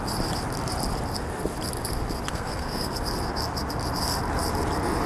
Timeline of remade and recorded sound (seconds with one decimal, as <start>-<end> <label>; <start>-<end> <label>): 0.0-2.3 recorded; 2.3-2.9 remade; 2.9-5.1 recorded